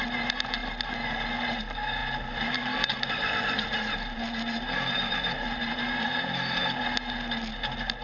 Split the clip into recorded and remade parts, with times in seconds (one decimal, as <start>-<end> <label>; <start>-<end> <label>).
0.0-2.0 recorded; 2.0-5.8 remade; 5.8-8.0 recorded